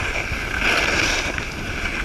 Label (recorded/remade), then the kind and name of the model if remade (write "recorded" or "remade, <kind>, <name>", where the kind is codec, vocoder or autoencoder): recorded